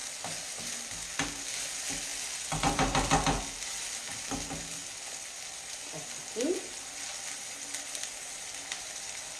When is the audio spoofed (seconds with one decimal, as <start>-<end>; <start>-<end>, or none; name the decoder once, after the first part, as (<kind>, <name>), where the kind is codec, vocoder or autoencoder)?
none